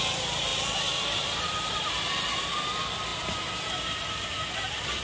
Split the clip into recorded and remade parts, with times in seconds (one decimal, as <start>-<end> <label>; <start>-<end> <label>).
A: 0.0-5.0 recorded